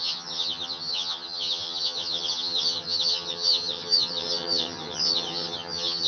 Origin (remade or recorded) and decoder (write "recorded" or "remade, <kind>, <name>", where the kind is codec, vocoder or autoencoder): remade, vocoder, HiFi-GAN